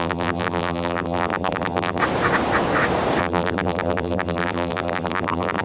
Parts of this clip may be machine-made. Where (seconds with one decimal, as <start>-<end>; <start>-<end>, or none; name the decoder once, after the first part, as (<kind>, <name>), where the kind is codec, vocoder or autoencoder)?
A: 0.0-2.0 (vocoder, BigVGAN v2); 3.2-5.6